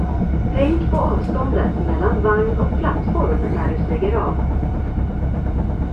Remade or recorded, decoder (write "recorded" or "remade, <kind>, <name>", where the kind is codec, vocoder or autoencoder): recorded